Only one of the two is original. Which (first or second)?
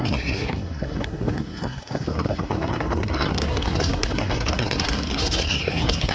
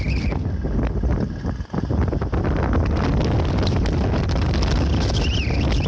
second